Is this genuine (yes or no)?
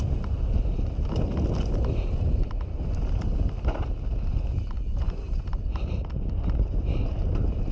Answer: yes